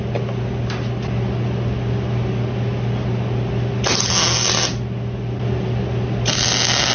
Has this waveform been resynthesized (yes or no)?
no